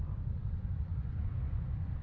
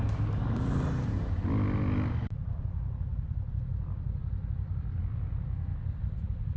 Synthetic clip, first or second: first